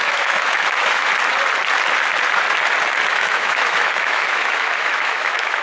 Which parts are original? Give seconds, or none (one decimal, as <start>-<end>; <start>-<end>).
1.1-3.1